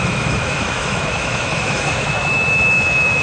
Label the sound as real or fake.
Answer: fake